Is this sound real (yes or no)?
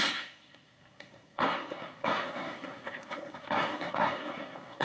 no